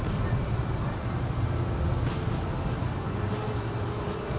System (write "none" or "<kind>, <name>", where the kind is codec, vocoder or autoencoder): none